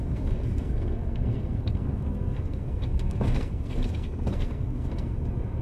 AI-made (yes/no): yes